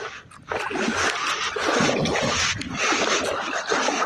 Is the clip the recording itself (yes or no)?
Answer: yes